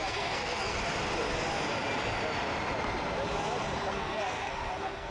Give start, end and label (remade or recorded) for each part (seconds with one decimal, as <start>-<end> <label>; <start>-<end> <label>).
0.0-0.8 remade; 0.8-3.9 recorded; 3.9-5.1 remade